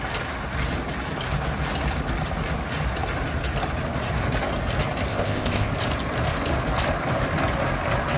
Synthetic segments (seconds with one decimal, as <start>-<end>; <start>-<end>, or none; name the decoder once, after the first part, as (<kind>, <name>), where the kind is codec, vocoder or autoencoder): 5.1-5.7 (codec, ZipCodec)